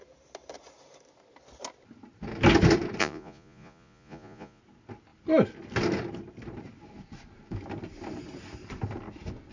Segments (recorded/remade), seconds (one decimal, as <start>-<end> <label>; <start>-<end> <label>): 0.0-3.0 recorded; 3.0-4.6 remade; 4.6-9.5 recorded

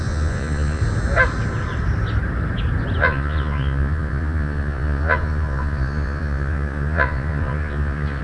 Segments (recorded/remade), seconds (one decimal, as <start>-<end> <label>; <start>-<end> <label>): 0.0-0.8 remade; 0.8-3.0 recorded; 3.0-8.2 remade

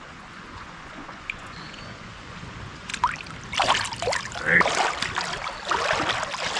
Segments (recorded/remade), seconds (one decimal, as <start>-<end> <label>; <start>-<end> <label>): 0.0-2.9 remade; 2.9-6.6 recorded

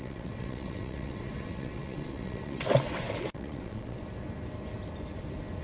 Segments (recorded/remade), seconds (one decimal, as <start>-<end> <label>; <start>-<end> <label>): 0.0-4.0 remade; 4.0-5.6 recorded